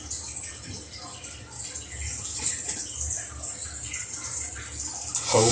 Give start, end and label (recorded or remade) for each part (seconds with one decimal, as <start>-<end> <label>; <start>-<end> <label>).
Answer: 0.0-5.5 recorded